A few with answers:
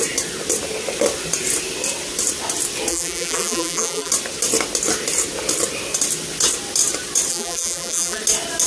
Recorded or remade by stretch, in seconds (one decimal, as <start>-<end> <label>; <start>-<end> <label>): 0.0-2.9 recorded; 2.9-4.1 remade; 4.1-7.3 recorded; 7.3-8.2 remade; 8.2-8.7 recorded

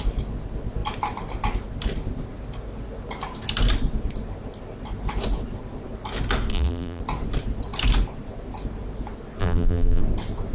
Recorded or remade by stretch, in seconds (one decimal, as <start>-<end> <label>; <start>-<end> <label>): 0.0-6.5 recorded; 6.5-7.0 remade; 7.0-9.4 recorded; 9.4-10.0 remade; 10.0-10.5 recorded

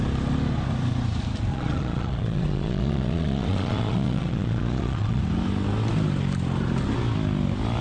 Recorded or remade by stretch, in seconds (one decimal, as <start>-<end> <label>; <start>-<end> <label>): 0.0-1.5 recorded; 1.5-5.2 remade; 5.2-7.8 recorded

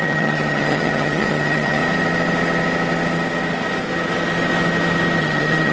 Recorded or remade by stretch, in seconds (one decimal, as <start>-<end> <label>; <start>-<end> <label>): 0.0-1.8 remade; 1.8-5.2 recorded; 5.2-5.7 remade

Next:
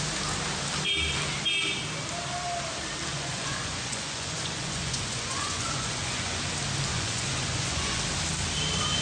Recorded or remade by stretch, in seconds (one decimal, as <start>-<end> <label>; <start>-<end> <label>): 0.0-3.1 recorded; 3.1-6.4 remade; 6.4-6.9 recorded; 6.9-8.0 remade; 8.0-9.0 recorded